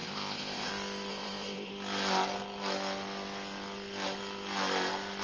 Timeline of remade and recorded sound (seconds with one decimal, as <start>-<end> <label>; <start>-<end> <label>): 0.0-0.7 remade; 0.7-1.1 recorded; 1.1-1.7 remade; 1.7-5.2 recorded